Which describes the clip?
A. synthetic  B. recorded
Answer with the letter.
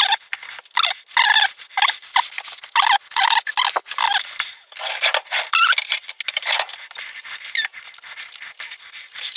B